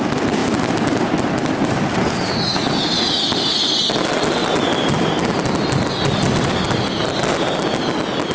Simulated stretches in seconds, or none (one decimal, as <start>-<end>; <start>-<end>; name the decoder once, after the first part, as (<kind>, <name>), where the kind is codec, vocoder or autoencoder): none